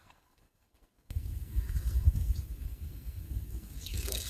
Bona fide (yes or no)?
no